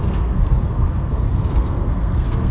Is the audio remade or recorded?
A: remade